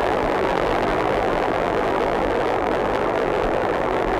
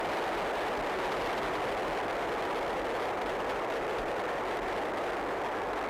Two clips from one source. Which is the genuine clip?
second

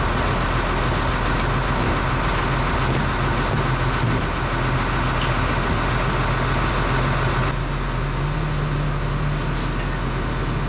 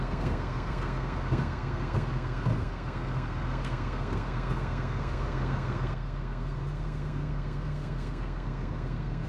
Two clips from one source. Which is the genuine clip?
first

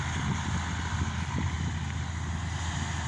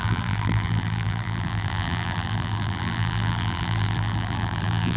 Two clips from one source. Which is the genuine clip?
first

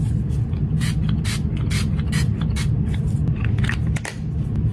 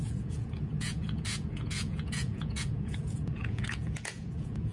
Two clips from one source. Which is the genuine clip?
first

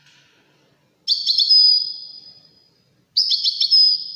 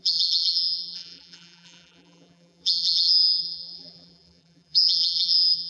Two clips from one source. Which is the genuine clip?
first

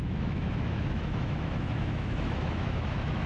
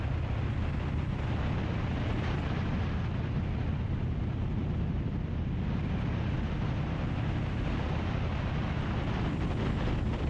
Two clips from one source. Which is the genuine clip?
second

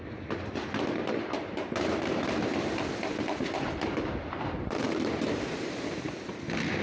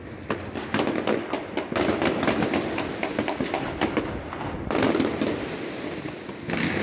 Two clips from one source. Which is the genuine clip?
second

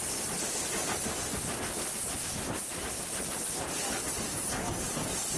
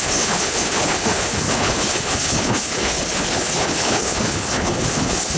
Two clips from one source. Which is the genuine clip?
first